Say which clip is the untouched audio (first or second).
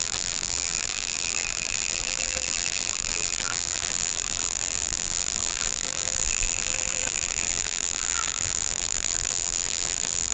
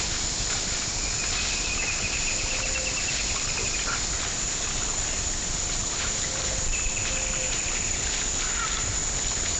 second